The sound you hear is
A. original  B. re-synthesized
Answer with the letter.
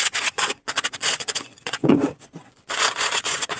B